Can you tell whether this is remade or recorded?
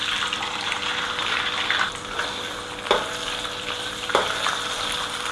remade